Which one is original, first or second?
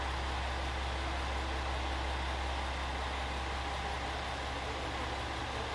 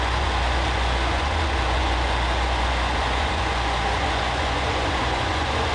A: first